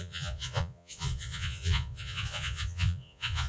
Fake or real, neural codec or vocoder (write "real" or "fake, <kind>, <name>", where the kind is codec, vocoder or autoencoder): fake, vocoder, Vocos